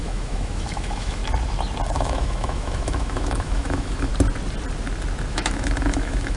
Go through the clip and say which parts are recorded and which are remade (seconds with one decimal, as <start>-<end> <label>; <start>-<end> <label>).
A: 0.0-1.2 remade; 1.2-1.9 recorded; 1.9-4.1 remade; 4.1-5.3 recorded; 5.3-6.4 remade